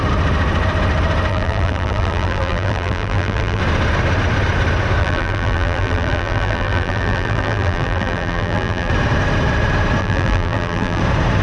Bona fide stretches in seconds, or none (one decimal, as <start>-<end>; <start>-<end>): 0.0-1.3; 3.6-5.0; 8.9-10.0; 11.0-11.4